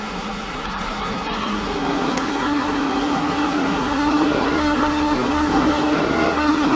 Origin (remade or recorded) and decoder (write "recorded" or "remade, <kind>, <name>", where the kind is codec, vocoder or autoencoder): remade, codec, SNAC